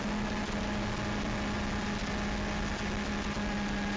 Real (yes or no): yes